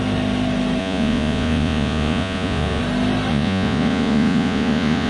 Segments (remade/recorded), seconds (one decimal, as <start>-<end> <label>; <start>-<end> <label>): 0.0-0.8 recorded; 0.8-2.8 remade; 2.8-3.3 recorded; 3.3-5.1 remade